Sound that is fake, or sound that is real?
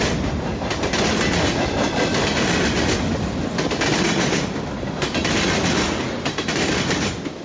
real